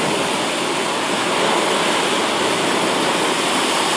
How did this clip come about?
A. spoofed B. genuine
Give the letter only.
B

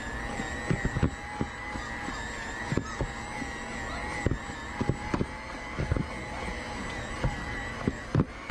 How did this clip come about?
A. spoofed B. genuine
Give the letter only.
B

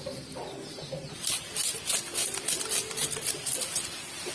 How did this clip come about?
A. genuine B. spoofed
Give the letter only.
A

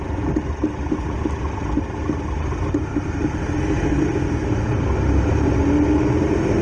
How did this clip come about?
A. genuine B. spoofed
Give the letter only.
A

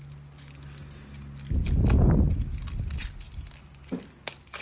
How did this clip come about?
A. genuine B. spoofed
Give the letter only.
A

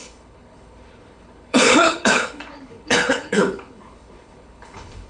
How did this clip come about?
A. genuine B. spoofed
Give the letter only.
B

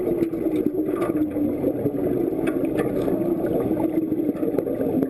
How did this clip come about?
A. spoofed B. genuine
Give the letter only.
B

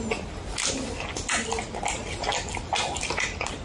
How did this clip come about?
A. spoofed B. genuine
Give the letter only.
B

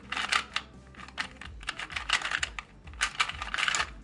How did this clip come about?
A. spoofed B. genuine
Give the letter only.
B